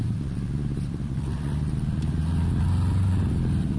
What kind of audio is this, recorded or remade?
recorded